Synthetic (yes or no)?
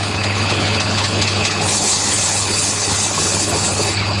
yes